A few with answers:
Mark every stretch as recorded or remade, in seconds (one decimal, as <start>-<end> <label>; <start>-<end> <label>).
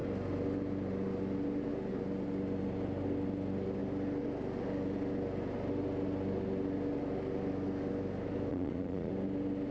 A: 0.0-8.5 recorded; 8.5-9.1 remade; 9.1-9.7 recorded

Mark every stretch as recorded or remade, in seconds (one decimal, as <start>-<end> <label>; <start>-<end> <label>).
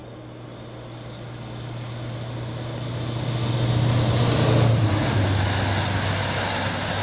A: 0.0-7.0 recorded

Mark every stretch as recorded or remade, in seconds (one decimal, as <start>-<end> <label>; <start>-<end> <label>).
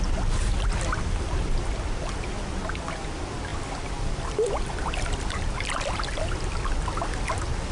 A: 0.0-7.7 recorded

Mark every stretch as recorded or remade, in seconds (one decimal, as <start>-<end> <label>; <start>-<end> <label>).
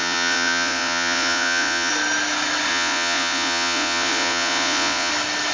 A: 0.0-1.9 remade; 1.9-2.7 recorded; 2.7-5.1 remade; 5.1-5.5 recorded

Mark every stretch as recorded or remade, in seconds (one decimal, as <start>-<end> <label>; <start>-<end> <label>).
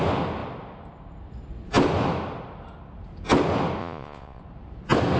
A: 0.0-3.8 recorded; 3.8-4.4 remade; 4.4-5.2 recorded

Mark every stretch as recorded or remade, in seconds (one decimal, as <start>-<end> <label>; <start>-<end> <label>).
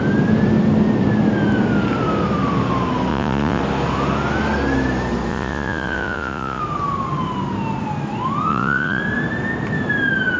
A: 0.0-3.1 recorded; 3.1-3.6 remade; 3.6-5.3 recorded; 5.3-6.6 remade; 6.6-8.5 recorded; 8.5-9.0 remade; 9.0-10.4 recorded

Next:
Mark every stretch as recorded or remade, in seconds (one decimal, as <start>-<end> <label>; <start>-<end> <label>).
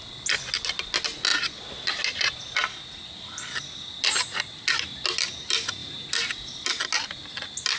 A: 0.0-7.8 recorded